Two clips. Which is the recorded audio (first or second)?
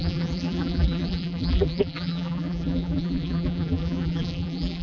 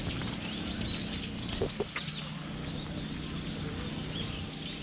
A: second